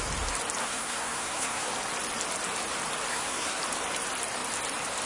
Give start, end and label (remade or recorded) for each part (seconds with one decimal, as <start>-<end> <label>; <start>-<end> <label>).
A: 0.0-0.6 recorded; 0.6-1.7 remade; 1.7-3.1 recorded; 3.1-3.6 remade; 3.6-5.1 recorded